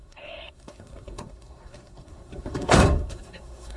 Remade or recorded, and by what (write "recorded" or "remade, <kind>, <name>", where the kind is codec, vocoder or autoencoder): remade, codec, SNAC